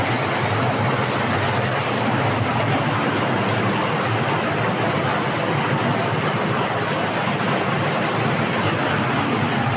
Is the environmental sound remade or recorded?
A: recorded